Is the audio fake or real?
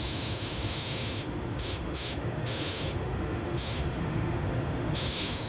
fake